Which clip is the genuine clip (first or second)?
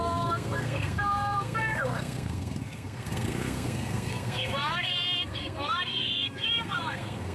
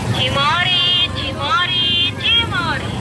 second